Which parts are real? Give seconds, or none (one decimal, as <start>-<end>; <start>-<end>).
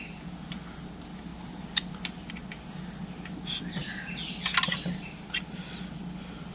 0.0-6.5